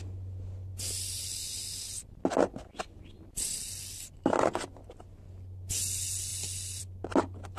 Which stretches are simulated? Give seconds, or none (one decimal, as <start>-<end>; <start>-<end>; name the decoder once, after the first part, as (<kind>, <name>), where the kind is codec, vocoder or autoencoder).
none